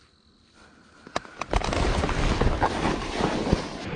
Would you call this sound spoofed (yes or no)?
no